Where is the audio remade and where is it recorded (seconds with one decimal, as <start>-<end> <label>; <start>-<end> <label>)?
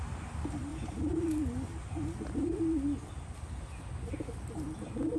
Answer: 0.0-5.2 recorded